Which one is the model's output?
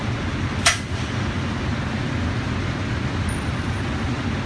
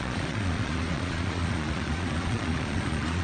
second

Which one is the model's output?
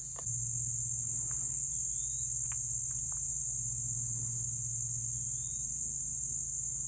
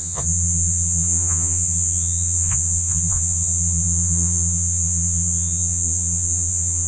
second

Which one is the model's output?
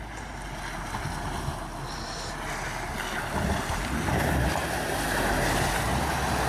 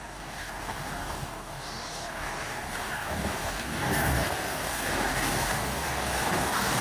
second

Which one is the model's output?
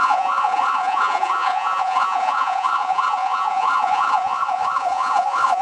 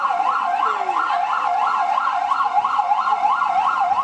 first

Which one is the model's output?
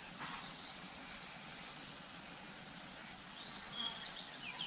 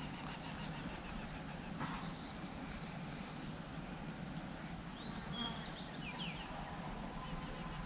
first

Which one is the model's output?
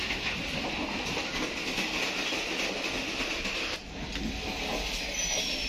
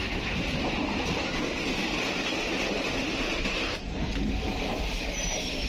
second